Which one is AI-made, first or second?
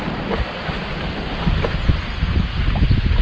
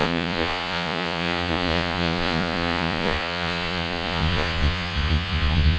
second